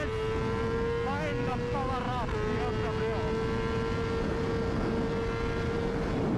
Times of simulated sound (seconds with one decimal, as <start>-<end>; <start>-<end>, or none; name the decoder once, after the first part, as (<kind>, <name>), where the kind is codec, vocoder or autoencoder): none